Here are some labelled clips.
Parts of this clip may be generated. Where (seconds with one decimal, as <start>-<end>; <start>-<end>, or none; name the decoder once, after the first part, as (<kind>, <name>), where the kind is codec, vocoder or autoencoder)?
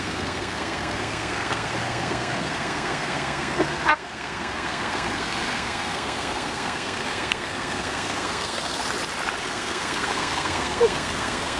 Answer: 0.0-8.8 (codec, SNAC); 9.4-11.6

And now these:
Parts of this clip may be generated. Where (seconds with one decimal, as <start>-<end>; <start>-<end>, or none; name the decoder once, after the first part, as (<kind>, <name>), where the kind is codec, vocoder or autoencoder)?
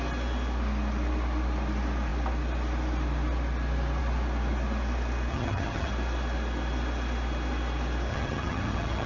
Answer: 5.3-5.9 (vocoder, HiFi-GAN); 8.1-9.1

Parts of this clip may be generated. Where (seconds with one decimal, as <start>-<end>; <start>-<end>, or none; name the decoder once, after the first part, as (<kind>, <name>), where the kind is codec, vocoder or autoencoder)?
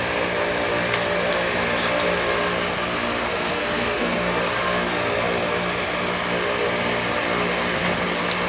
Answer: 3.2-4.4 (codec, SNAC)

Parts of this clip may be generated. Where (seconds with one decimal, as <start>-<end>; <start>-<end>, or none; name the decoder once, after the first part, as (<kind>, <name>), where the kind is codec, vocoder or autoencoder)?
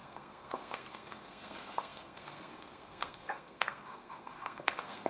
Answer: 0.0-5.1 (codec, SNAC)